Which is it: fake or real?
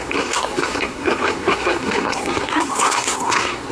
fake